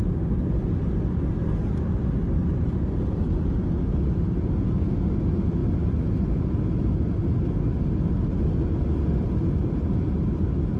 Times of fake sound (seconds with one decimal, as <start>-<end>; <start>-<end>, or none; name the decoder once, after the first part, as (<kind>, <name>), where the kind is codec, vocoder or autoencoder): none